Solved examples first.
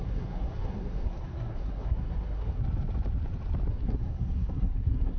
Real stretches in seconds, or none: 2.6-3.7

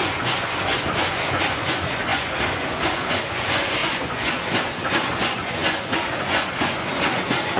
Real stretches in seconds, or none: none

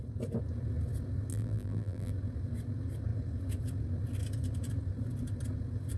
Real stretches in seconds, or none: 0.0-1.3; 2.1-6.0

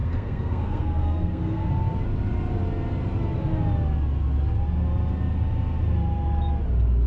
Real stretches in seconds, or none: 1.7-7.1

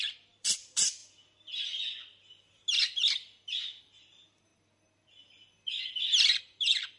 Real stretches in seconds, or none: 1.0-3.8; 4.5-6.4

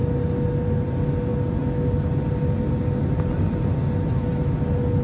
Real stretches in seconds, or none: 0.0-5.0